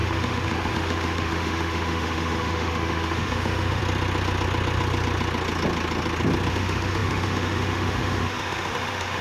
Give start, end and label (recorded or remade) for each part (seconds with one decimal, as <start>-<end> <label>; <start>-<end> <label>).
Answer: 0.0-3.8 remade; 3.8-6.5 recorded; 6.5-9.2 remade